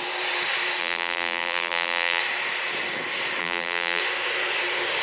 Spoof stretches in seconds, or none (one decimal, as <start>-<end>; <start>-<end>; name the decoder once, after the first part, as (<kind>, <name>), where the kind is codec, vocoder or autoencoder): 0.8-2.2 (vocoder, BigVGAN v2); 3.4-4.0